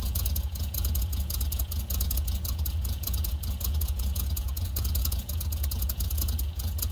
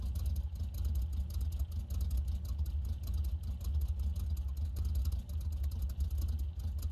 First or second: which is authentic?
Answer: second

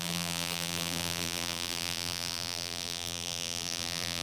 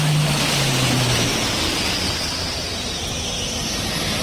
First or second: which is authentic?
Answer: second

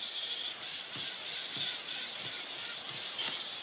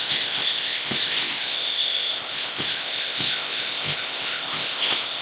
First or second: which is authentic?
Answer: first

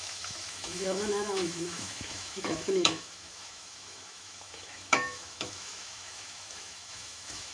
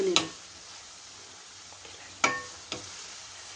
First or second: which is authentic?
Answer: second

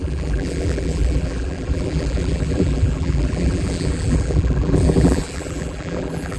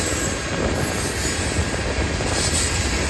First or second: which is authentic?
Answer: second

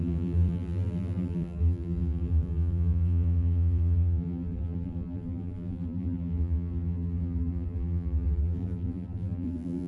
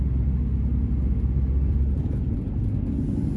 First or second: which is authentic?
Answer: second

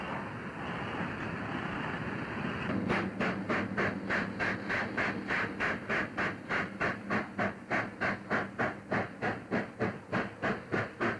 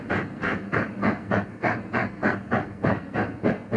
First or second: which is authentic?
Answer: first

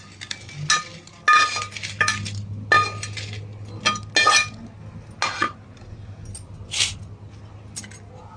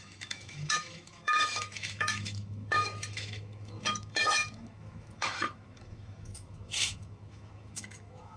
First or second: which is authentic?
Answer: first